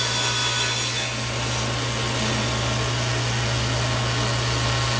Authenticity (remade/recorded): recorded